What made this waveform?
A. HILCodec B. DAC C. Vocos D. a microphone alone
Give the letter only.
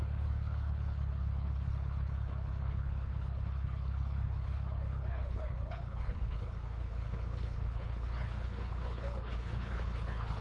A